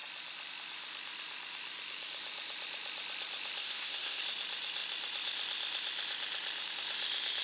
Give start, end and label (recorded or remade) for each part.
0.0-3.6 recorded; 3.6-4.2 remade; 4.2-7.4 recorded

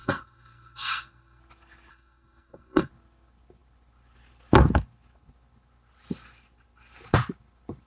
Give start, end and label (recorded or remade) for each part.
0.0-1.4 remade; 1.4-1.9 recorded; 1.9-2.9 remade; 2.9-7.9 recorded

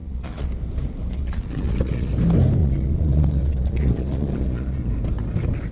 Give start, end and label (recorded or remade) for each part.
0.0-0.5 remade; 0.5-1.1 recorded; 1.1-2.1 remade; 2.1-2.6 recorded; 2.6-4.9 remade; 4.9-5.7 recorded

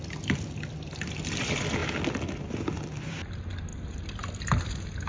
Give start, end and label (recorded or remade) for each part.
0.0-5.1 recorded

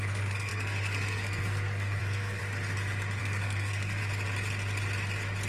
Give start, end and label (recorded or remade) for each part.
0.0-2.4 remade; 2.4-3.2 recorded; 3.2-4.0 remade; 4.0-5.5 recorded

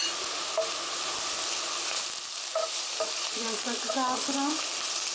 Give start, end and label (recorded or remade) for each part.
0.0-2.6 recorded; 2.6-3.9 remade; 3.9-5.1 recorded

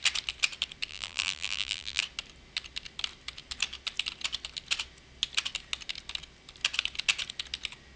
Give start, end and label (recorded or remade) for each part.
0.0-0.9 recorded; 0.9-2.0 remade; 2.0-8.0 recorded